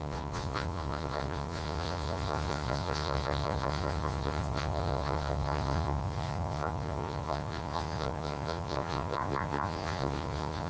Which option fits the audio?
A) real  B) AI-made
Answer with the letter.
B